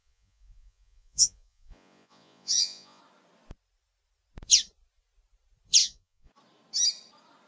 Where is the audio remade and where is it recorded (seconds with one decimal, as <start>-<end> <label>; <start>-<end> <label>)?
0.0-3.0 remade; 3.0-5.8 recorded; 5.8-6.3 remade; 6.3-7.5 recorded